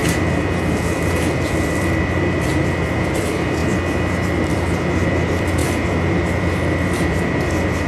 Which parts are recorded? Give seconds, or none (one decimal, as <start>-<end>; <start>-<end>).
none